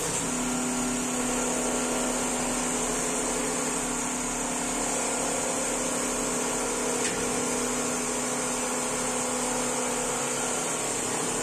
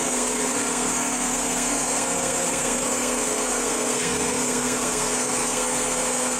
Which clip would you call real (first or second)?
first